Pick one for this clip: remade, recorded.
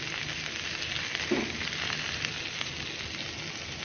recorded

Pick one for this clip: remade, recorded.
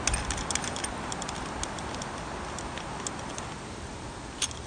recorded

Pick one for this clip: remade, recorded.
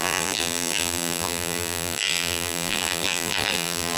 remade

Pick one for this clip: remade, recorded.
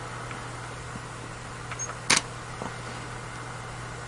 recorded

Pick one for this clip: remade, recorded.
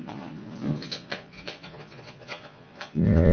remade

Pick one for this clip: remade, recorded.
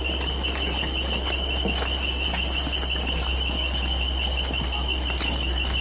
recorded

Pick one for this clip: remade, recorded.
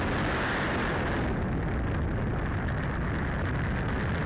recorded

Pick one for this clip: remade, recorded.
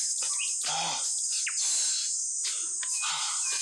recorded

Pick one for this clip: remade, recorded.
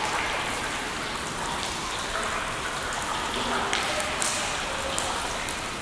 recorded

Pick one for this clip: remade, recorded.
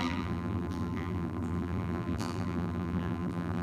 remade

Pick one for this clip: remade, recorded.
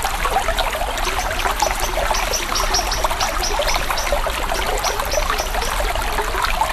recorded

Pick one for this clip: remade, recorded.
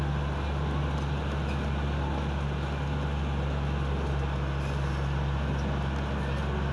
recorded